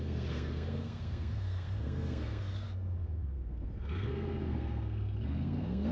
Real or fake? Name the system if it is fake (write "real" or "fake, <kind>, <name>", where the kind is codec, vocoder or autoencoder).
fake, codec, SNAC